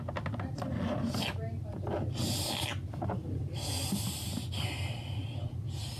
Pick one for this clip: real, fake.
real